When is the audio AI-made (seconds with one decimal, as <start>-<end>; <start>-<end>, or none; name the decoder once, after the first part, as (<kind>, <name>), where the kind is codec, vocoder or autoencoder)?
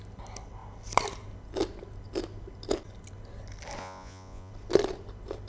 3.8-4.5 (vocoder, Vocos)